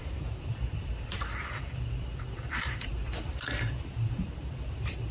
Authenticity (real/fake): fake